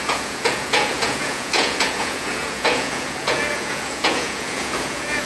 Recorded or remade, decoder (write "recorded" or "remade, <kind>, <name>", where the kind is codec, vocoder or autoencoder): remade, vocoder, Vocos